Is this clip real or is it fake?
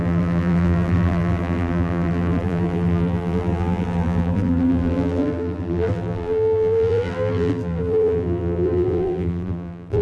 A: fake